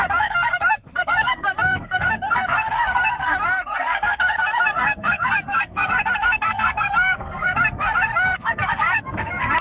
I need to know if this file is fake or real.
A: fake